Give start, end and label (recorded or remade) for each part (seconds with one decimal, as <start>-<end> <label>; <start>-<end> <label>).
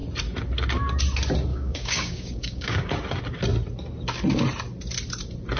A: 0.0-1.5 recorded; 1.5-2.9 remade; 2.9-5.6 recorded